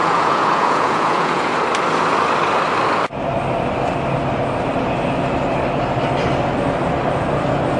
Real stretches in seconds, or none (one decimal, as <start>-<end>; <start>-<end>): 1.5-7.8